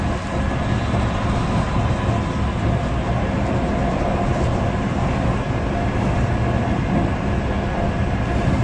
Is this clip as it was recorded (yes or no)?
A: yes